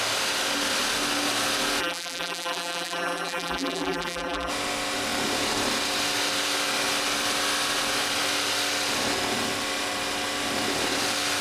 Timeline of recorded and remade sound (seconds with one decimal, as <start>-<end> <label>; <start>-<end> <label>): 0.0-1.8 recorded; 1.8-4.5 remade; 4.5-11.4 recorded

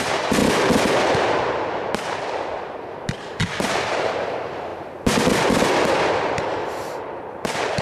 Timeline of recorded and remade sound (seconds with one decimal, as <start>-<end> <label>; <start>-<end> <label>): 0.0-0.4 remade; 0.4-3.4 recorded; 3.4-4.7 remade; 4.7-6.1 recorded; 6.1-7.8 remade

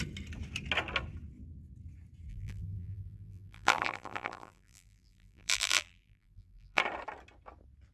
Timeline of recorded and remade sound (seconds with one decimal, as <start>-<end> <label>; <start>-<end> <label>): 0.0-2.3 recorded; 2.3-6.8 remade; 6.8-7.9 recorded

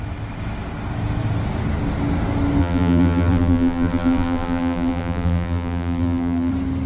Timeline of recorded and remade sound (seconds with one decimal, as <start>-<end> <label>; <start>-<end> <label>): 0.0-2.6 recorded; 2.6-6.5 remade; 6.5-6.9 recorded

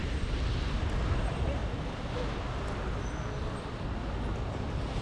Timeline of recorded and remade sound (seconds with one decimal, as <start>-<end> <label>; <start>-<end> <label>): 0.0-1.6 remade; 1.6-4.6 recorded; 4.6-5.0 remade

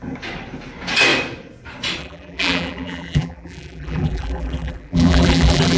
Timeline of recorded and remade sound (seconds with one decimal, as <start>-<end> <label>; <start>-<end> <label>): 0.0-2.0 recorded; 2.0-5.8 remade

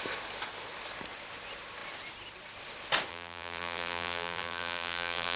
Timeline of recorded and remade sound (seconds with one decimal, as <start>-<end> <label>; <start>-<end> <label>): 0.0-3.1 recorded; 3.1-5.4 remade